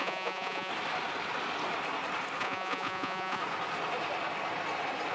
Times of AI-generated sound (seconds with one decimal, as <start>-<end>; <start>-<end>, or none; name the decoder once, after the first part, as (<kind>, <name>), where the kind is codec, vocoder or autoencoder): 0.0-0.7 (vocoder, Vocos); 2.4-3.4